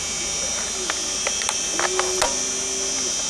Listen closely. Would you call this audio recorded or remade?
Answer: recorded